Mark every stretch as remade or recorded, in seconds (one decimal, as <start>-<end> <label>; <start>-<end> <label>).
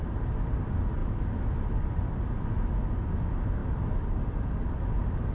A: 0.0-1.0 recorded; 1.0-2.2 remade; 2.2-3.6 recorded; 3.6-4.7 remade; 4.7-5.3 recorded